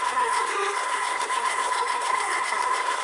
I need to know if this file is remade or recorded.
remade